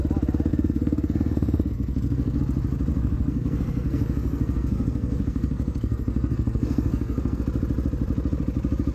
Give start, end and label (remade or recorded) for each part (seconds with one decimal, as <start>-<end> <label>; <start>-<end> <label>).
0.0-0.5 recorded; 0.5-2.4 remade; 2.4-2.9 recorded; 2.9-7.4 remade; 7.4-8.9 recorded